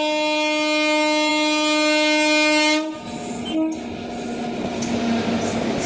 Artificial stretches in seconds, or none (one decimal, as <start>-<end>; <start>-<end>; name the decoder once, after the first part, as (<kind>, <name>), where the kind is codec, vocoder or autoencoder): none